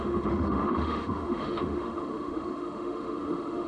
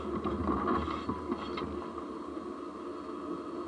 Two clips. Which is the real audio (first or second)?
second